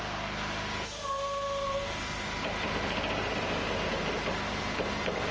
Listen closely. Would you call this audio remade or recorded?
recorded